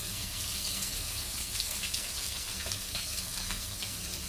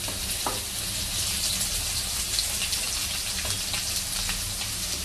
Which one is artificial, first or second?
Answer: first